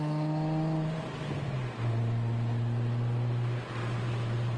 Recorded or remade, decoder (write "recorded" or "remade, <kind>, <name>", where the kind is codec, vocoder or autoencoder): recorded